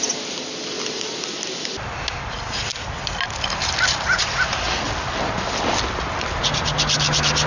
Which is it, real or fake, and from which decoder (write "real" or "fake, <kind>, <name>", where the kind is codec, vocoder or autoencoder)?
real